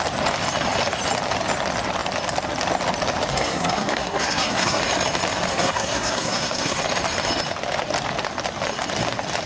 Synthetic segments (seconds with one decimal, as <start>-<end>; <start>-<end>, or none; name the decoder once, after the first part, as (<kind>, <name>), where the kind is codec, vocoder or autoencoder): 3.3-4.8 (codec, SNAC); 5.5-6.8